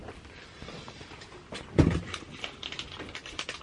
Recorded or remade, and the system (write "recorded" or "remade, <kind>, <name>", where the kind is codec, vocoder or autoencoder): recorded